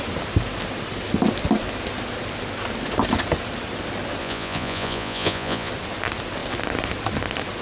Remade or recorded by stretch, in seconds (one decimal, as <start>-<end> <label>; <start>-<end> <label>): 0.0-4.2 recorded; 4.2-5.7 remade; 5.7-7.6 recorded